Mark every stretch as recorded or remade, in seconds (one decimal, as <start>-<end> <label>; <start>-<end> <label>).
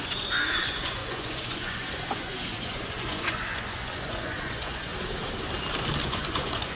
0.0-4.9 remade; 4.9-6.0 recorded; 6.0-6.8 remade